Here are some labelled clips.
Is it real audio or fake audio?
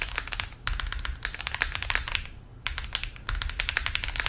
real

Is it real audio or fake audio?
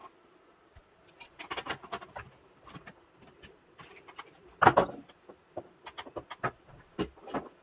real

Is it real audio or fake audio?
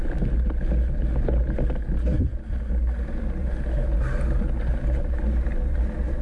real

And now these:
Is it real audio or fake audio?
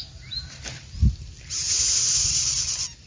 real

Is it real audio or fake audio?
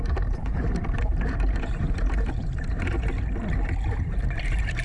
fake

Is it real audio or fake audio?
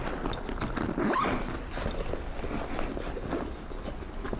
real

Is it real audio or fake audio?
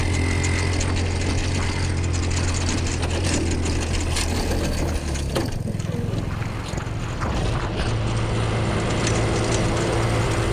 real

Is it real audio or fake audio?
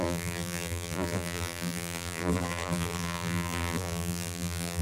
fake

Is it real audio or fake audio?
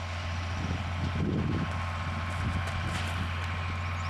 real